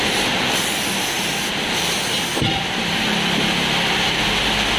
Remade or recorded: recorded